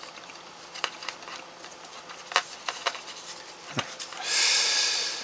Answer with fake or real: fake